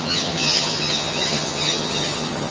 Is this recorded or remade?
remade